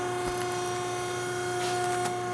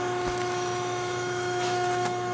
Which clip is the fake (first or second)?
second